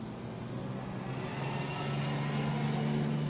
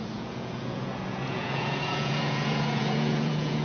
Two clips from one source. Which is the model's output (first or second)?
second